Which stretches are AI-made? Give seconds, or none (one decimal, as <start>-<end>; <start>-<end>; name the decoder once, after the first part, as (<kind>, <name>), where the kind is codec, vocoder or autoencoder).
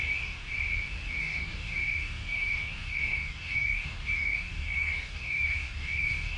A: 0.0-0.5 (codec, DAC); 1.2-6.4